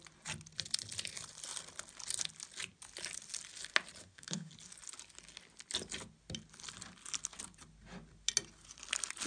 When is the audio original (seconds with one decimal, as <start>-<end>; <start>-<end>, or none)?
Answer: 0.0-4.0; 4.5-9.3